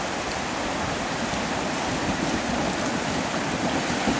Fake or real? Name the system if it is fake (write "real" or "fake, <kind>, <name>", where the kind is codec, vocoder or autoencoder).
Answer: real